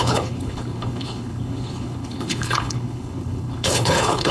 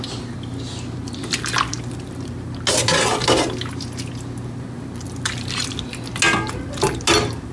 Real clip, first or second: second